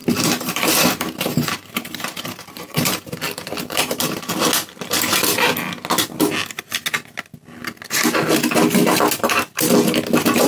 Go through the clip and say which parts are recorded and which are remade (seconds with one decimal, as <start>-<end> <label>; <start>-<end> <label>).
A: 0.0-4.2 remade; 4.2-10.5 recorded